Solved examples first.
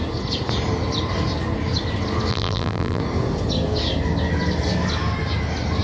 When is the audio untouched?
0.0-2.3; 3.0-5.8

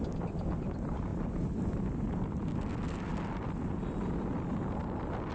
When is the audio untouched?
0.0-5.3

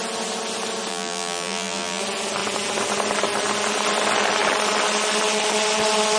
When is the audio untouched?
0.0-0.9; 2.0-6.2

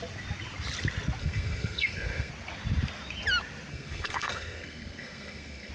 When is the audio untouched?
0.0-1.2; 2.3-3.7

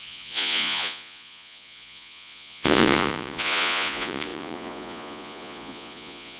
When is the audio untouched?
none

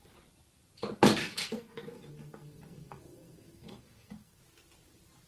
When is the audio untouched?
0.0-1.2; 4.4-5.3